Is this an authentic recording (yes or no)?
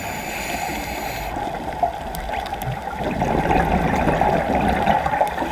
no